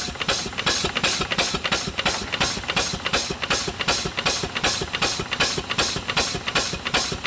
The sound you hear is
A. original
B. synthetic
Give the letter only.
A